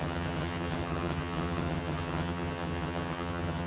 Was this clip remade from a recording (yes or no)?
yes